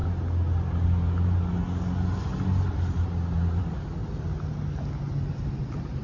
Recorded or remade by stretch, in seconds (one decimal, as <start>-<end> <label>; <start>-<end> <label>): 0.0-6.0 recorded